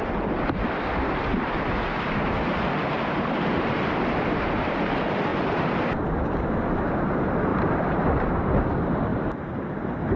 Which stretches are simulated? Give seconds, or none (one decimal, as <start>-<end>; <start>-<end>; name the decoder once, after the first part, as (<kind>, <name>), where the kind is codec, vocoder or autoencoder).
7.5-8.6 (vocoder, BigVGAN v2); 9.1-10.2